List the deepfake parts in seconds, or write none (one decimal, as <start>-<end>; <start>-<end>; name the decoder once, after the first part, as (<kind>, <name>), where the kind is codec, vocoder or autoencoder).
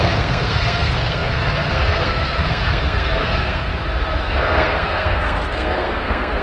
0.0-3.7 (codec, SNAC); 4.2-6.4